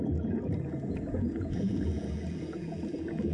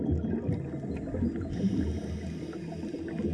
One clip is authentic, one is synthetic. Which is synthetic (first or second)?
first